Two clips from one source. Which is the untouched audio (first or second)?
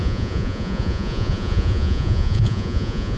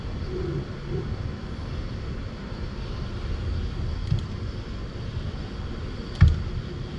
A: second